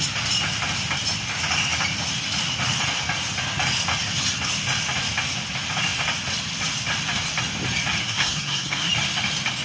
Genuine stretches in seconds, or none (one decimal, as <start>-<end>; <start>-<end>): 0.0-8.0; 8.9-9.6